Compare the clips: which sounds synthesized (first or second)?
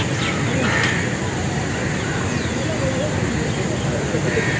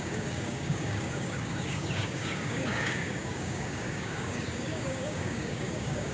second